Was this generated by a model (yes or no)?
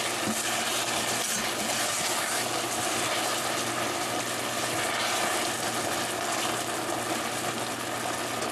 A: no